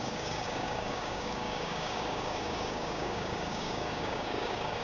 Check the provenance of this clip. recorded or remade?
remade